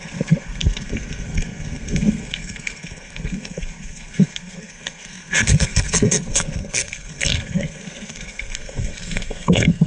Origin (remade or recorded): remade